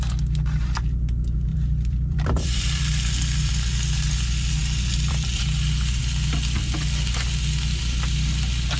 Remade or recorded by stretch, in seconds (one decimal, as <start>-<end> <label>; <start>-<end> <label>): 0.0-1.5 recorded; 1.5-3.5 remade; 3.5-4.6 recorded; 4.6-5.4 remade; 5.4-8.8 recorded